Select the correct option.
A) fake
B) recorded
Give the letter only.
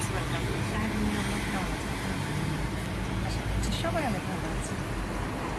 B